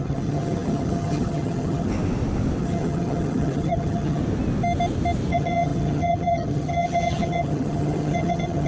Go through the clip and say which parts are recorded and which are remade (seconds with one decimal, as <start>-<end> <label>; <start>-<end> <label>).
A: 0.0-1.9 remade; 1.9-2.6 recorded; 2.6-4.2 remade; 4.2-5.3 recorded; 5.3-8.7 remade